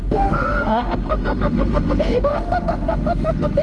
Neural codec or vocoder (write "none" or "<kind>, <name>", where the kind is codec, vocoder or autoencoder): autoencoder, DAC-VAE